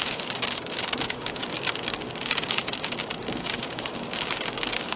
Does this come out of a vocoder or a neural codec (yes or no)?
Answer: yes